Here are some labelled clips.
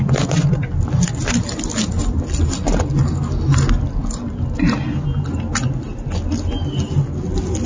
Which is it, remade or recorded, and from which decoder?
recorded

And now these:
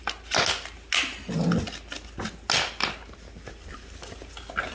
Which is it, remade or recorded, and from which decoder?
recorded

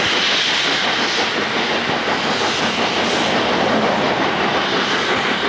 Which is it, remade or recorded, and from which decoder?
recorded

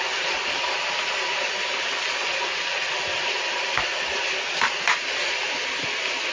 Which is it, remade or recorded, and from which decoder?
recorded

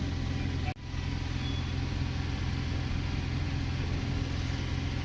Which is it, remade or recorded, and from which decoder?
recorded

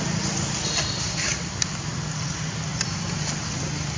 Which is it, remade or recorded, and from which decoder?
recorded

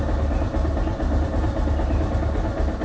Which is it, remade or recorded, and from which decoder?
recorded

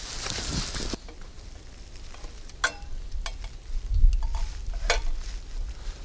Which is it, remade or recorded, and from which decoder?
recorded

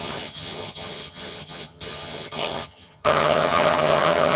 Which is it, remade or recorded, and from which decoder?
remade, vocoder, HiFi-GAN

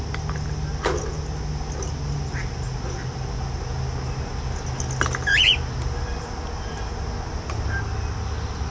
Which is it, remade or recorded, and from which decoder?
recorded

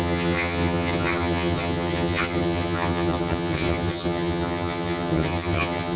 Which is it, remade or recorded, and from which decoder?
remade, vocoder, HiFi-GAN